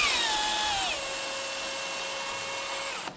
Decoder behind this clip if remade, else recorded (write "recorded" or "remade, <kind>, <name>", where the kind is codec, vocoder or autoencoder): recorded